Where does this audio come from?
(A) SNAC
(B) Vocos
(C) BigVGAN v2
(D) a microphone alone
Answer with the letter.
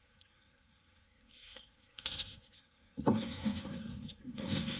A